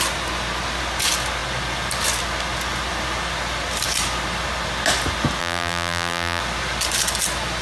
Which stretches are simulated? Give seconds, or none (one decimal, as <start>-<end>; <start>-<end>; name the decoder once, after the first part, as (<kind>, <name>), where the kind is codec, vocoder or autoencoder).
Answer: 5.4-6.4 (vocoder, BigVGAN v2)

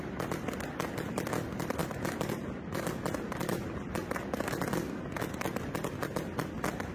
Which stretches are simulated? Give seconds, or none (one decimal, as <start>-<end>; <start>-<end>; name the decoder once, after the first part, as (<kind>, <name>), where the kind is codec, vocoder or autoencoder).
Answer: none

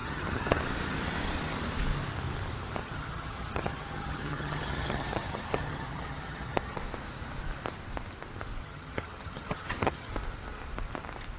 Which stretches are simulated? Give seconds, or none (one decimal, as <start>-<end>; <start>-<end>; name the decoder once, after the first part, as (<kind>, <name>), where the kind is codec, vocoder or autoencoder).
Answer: 0.0-0.6 (vocoder, HiFi-GAN); 2.8-6.8; 8.6-10.1

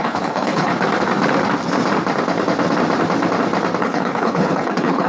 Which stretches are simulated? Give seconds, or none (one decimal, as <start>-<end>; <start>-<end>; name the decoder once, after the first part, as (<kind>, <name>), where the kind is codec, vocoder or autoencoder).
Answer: 0.0-0.7 (codec, HILCodec); 3.8-5.1

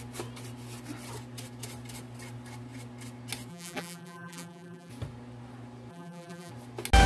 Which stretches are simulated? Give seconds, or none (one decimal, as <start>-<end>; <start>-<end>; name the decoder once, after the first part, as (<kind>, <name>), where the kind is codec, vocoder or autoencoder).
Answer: 3.5-4.9 (vocoder, BigVGAN v2); 5.9-6.5

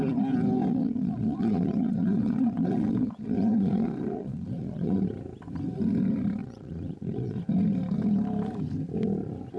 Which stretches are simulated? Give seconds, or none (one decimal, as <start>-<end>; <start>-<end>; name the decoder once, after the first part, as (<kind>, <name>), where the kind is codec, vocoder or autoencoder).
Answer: 0.7-5.0 (vocoder, Vocos); 6.4-7.4

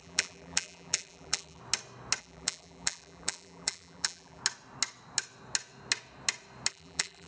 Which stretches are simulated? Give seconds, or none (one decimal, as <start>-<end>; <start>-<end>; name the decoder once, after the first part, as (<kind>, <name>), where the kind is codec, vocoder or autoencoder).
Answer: 0.0-1.6 (vocoder, BigVGAN v2); 2.2-4.4; 6.7-7.3

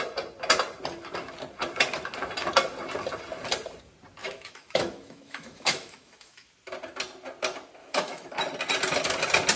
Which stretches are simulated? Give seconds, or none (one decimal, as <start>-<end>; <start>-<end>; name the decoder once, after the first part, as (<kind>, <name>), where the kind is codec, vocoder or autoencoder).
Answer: 4.2-6.5 (autoencoder, DAC-VAE); 7.8-8.3